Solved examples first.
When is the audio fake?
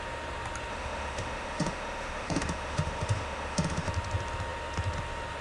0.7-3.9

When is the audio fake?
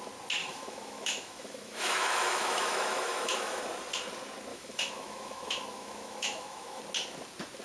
0.4-3.6; 4.5-6.8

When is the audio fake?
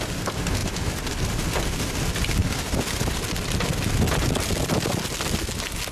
none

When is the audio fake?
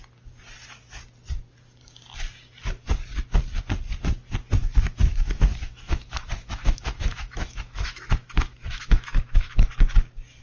4.6-9.7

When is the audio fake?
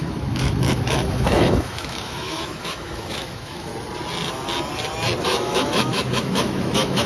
0.0-3.7; 5.2-7.1